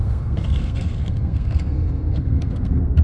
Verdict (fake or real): fake